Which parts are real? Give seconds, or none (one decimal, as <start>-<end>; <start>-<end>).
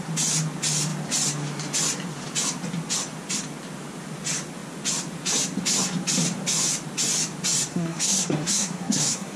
0.0-7.7